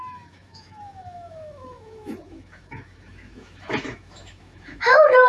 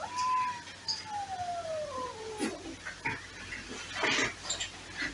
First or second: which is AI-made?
first